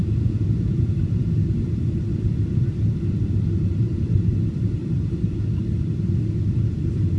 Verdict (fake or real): fake